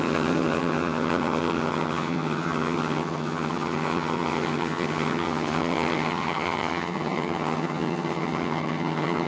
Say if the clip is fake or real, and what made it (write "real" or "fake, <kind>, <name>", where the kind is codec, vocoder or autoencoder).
fake, vocoder, HiFi-GAN